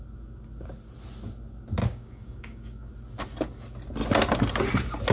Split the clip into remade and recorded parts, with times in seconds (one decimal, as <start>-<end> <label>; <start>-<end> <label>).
0.0-1.8 recorded; 1.8-2.9 remade; 2.9-5.1 recorded